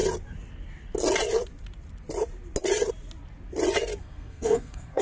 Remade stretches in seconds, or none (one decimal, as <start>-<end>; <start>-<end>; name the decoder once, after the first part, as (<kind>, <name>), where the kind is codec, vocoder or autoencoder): 4.0-5.0 (codec, SNAC)